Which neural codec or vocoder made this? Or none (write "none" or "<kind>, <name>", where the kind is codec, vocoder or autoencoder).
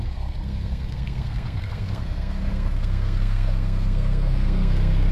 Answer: codec, SNAC